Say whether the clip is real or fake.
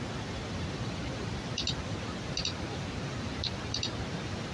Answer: real